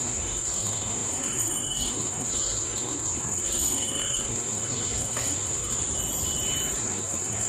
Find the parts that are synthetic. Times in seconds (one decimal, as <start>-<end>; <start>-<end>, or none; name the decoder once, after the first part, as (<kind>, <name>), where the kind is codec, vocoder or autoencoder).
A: 0.0-5.8 (codec, SNAC); 6.8-7.5